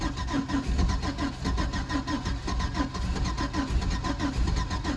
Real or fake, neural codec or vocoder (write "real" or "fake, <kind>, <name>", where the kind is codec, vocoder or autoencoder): real